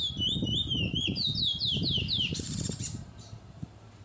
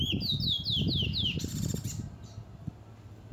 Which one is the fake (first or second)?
first